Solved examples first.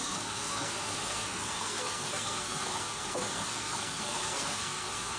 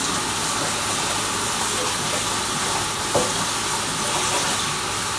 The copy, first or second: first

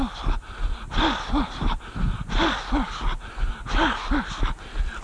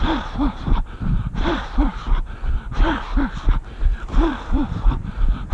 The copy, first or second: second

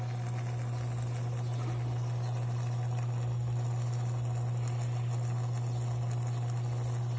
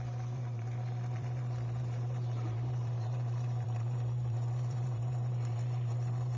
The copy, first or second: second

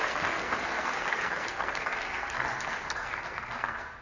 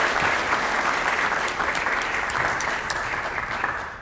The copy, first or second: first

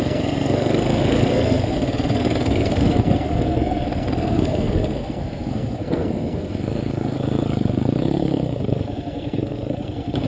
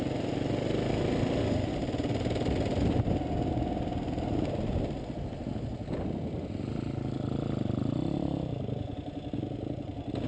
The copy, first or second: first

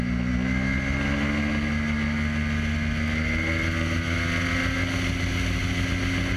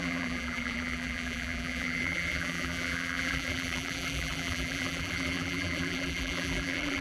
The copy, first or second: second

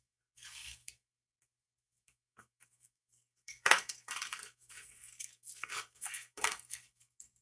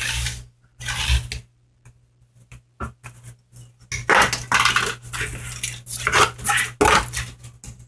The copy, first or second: first